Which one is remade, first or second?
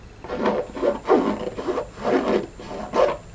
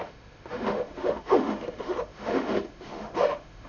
second